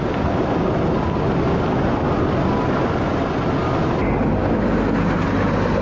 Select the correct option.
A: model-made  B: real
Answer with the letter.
B